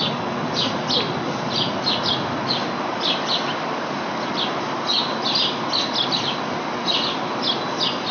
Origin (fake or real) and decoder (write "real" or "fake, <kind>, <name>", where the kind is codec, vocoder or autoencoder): real